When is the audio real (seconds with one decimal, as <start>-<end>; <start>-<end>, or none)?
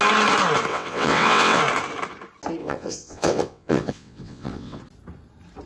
0.0-0.7; 1.6-2.6; 4.8-5.7